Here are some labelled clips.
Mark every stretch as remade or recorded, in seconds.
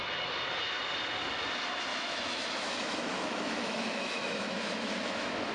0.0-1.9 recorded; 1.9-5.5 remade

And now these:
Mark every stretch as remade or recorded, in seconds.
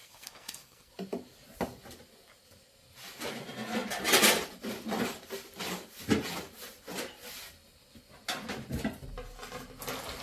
0.0-0.9 remade; 0.9-10.2 recorded